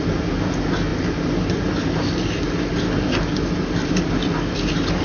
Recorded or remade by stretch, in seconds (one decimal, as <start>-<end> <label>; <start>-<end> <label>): 0.0-5.0 recorded

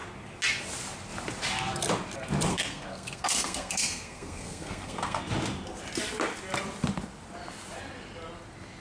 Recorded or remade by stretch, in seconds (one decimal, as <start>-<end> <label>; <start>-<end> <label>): 0.0-2.5 recorded; 2.5-5.2 remade; 5.2-8.8 recorded

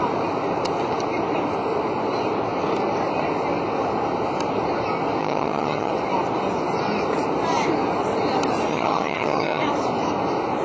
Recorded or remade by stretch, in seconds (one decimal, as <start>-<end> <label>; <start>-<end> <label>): 0.0-5.2 recorded; 5.2-5.9 remade; 5.9-8.7 recorded; 8.7-9.6 remade; 9.6-10.6 recorded